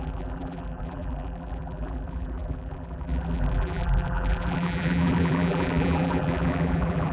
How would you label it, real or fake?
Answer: fake